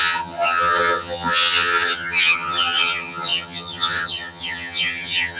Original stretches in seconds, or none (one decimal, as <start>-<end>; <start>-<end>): none